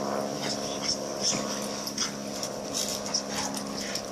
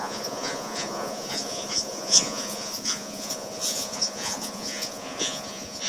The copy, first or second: second